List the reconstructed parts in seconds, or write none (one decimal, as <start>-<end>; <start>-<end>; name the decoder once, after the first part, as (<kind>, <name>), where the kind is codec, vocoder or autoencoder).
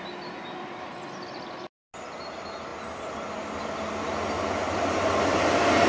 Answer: none